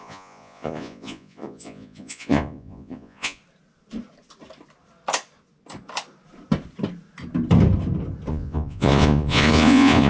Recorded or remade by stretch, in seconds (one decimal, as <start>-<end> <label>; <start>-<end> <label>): 0.0-3.4 remade; 3.4-8.3 recorded; 8.3-10.1 remade